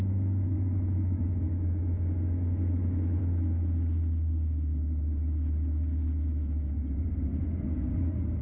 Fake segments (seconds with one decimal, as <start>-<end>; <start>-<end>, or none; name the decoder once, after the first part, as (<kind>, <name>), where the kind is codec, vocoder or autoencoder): 0.0-3.2 (autoencoder, DAC-VAE)